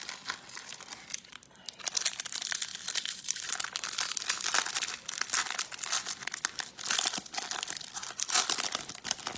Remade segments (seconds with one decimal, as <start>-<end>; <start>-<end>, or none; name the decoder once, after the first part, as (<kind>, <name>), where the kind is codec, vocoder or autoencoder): none